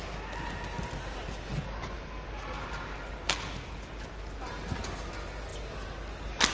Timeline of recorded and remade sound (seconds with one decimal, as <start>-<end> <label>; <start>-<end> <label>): 0.0-6.5 recorded